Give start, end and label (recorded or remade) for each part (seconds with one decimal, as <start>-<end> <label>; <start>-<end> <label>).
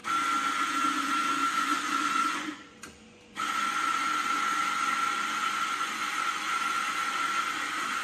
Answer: 0.0-1.5 recorded; 1.5-8.0 remade